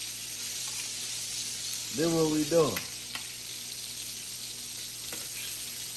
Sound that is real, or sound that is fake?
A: real